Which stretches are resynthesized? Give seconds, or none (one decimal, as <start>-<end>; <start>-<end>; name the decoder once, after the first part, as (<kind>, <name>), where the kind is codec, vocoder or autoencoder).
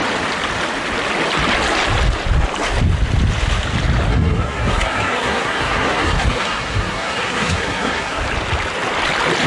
4.1-8.2 (codec, SNAC)